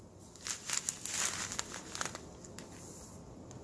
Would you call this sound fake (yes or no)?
no